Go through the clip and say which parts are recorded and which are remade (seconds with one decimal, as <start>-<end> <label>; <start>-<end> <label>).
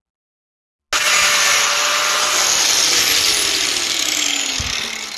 0.0-5.2 recorded